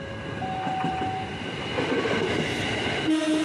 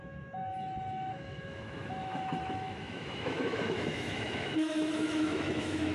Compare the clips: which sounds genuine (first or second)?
first